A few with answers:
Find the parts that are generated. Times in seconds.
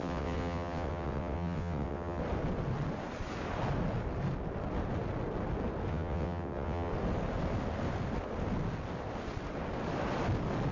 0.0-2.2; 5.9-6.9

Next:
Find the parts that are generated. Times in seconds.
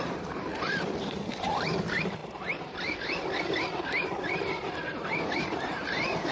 0.0-2.2; 5.4-6.3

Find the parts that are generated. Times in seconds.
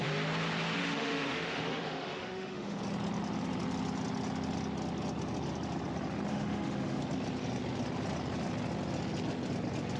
0.8-2.8; 6.3-7.0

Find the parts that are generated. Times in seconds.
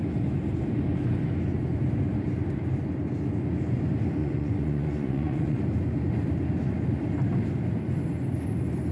4.2-5.6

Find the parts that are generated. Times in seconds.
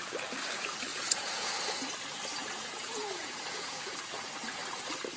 0.9-1.6; 2.4-3.8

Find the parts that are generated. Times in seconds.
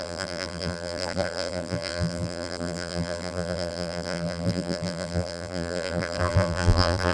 0.0-7.1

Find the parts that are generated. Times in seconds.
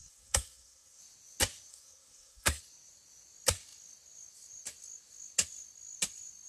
0.0-1.0; 1.7-2.6